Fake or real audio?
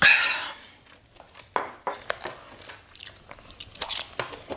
real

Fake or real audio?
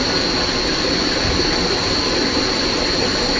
real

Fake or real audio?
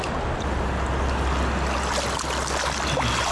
real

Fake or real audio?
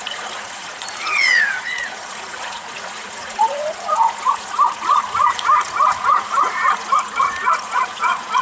fake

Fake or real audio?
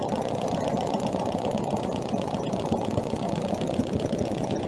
fake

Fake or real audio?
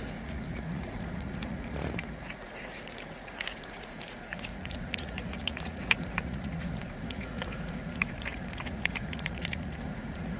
fake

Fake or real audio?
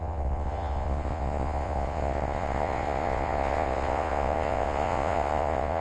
fake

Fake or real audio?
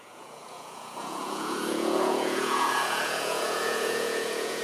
fake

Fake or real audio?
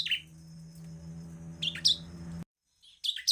real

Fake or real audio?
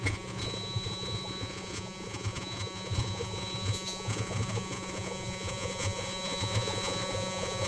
fake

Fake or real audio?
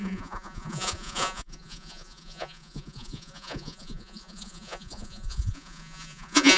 fake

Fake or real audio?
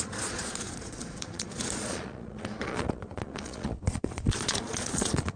fake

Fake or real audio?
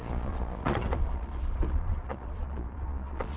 fake